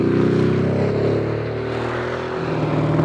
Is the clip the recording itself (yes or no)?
yes